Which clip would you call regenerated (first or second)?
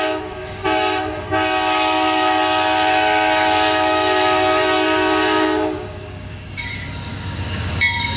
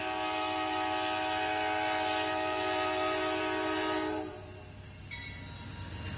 first